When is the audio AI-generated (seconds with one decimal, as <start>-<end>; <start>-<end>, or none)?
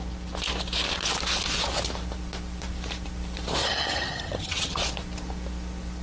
3.6-4.8